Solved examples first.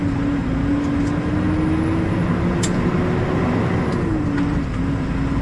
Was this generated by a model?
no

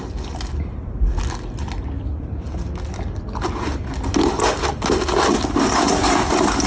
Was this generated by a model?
no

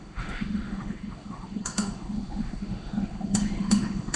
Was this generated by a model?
yes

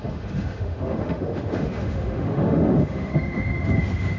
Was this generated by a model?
yes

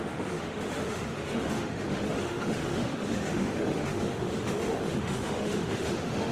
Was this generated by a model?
yes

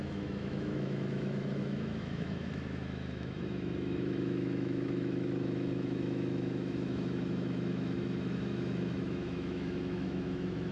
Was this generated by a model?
yes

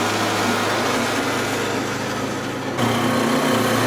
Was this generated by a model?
no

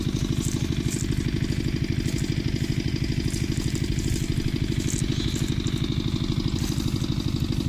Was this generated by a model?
no